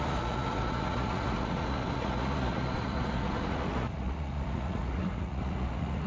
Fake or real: fake